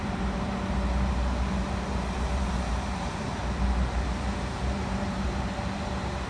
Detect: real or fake fake